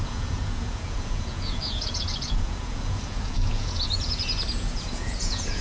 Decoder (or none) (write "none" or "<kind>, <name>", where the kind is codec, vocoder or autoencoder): vocoder, Vocos